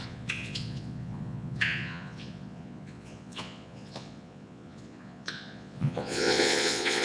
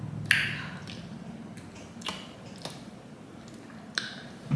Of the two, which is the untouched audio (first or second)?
second